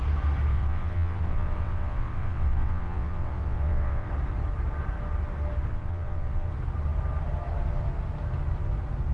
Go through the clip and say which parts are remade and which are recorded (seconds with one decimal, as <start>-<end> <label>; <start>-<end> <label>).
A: 0.0-0.5 recorded; 0.5-4.1 remade; 4.1-5.7 recorded; 5.7-6.5 remade; 6.5-9.1 recorded